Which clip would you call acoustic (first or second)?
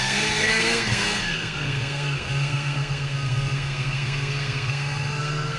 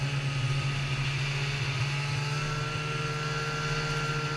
second